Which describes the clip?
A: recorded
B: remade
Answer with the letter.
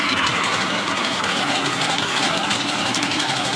B